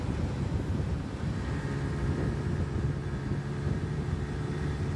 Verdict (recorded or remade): remade